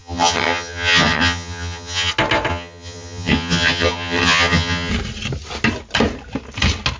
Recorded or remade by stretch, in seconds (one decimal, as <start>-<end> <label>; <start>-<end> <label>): 0.0-2.1 remade; 2.1-2.5 recorded; 2.5-4.9 remade; 4.9-7.0 recorded